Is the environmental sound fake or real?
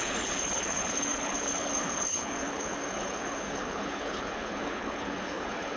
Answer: fake